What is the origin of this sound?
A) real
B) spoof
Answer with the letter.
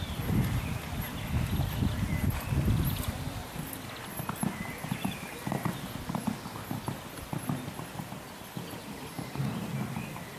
A